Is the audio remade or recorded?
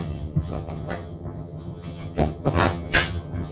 remade